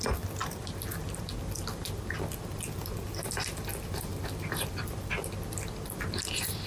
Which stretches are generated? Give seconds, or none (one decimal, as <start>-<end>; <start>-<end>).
none